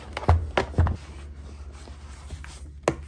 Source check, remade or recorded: recorded